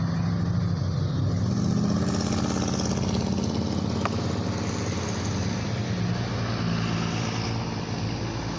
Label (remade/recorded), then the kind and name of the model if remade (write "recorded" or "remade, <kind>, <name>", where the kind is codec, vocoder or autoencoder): recorded